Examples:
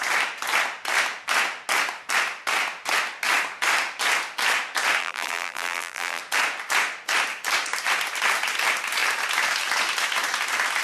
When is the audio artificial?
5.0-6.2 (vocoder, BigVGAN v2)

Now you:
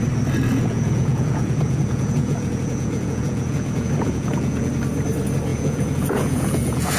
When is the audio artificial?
0.5-4.7 (vocoder, Vocos); 5.5-7.0

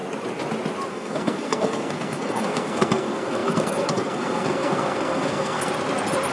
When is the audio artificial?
0.9-5.7 (codec, SNAC)

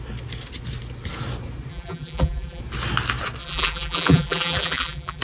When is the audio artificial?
1.7-2.6 (vocoder, BigVGAN v2); 3.4-5.2

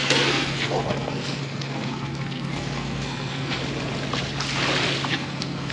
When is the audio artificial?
0.0-3.6 (codec, SNAC); 5.1-5.7

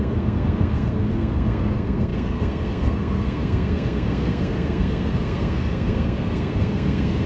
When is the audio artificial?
0.0-7.3 (codec, SNAC)

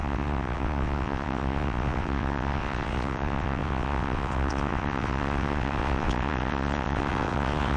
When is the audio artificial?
0.0-7.8 (vocoder, WaveNeXt)